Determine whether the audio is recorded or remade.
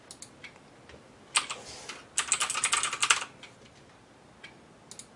recorded